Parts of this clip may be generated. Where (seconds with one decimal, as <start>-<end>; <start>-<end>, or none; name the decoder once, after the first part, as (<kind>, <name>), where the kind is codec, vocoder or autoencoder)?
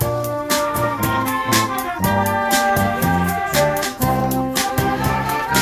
0.0-1.5 (autoencoder, DAC-VAE); 2.5-4.2; 4.7-5.6